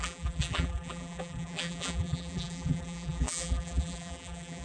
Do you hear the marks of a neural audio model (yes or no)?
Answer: yes